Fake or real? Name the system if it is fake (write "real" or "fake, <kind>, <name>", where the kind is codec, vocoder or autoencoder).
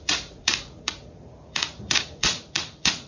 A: fake, vocoder, Vocos